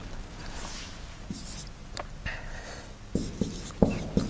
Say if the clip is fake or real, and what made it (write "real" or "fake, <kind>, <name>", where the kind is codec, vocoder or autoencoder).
real